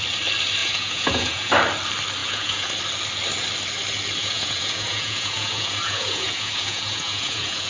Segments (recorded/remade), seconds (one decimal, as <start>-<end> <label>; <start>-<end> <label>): 0.0-0.6 recorded; 0.6-1.5 remade; 1.5-2.2 recorded; 2.2-2.7 remade; 2.7-4.2 recorded; 4.2-7.7 remade